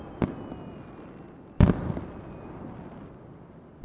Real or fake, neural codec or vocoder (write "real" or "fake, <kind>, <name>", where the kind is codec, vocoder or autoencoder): real